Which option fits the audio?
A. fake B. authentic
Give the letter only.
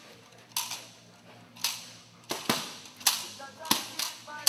B